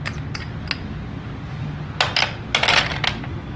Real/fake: real